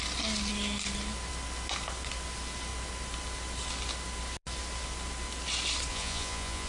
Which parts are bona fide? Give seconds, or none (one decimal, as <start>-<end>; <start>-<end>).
0.0-5.9